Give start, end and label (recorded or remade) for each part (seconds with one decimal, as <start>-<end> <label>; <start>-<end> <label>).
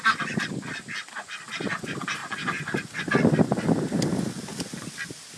0.0-2.2 recorded; 2.2-3.0 remade; 3.0-5.4 recorded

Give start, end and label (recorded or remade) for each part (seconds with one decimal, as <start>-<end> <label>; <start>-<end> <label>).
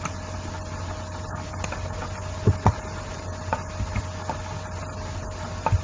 0.0-5.8 recorded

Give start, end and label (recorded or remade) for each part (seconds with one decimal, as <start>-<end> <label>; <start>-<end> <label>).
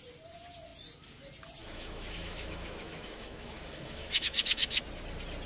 0.0-1.6 recorded; 1.6-4.8 remade; 4.8-5.5 recorded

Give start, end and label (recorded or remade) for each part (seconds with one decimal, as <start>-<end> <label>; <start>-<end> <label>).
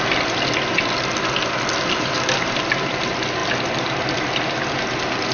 0.0-5.3 recorded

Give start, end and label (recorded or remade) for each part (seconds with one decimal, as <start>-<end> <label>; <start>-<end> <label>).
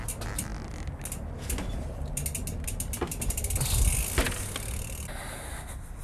0.0-6.0 recorded